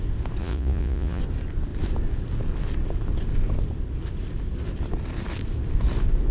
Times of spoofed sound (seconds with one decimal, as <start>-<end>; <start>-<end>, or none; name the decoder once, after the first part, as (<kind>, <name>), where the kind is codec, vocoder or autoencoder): 0.4-1.2 (vocoder, Vocos)